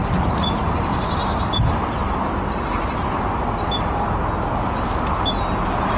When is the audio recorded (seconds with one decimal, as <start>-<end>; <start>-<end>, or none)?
0.0-6.0